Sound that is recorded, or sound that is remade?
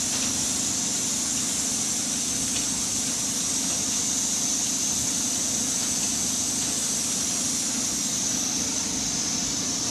recorded